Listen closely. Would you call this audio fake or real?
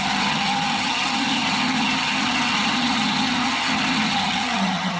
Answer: fake